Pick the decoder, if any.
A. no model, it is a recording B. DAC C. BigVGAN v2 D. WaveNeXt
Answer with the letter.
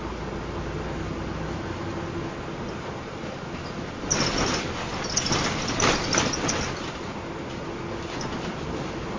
A